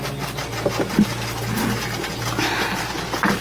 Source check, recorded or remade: recorded